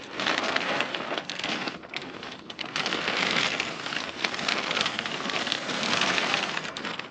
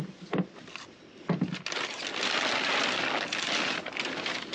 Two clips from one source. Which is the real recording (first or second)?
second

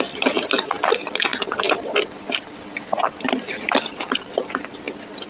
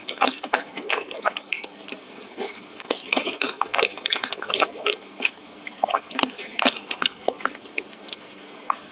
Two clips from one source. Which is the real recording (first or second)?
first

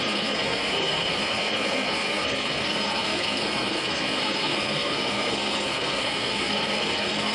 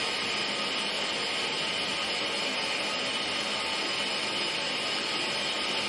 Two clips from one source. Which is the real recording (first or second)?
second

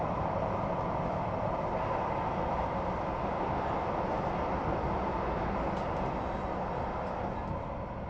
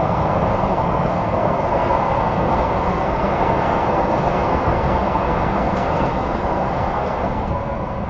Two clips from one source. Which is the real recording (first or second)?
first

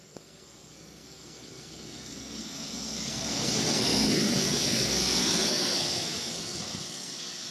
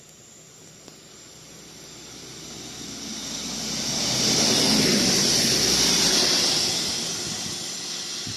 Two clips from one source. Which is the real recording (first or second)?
second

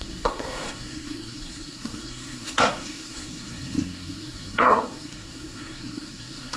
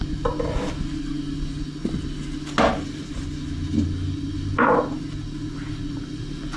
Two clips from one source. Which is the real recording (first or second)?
second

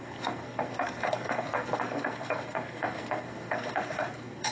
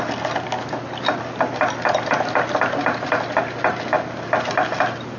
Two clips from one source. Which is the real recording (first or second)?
second